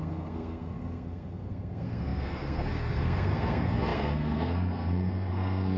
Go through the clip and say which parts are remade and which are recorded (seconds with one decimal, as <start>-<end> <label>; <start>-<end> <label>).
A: 0.0-5.8 remade